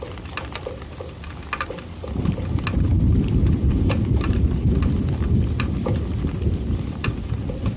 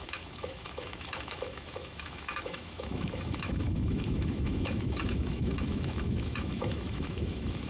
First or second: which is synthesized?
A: second